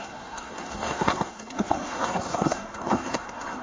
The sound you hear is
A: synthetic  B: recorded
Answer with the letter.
A